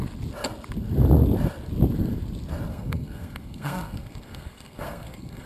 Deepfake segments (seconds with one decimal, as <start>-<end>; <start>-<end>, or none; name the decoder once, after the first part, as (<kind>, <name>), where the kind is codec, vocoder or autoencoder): 2.7-5.5 (codec, SNAC)